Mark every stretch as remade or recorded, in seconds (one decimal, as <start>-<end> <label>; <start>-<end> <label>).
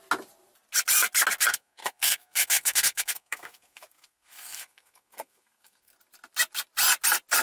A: 0.0-1.5 recorded; 1.5-5.9 remade; 5.9-7.4 recorded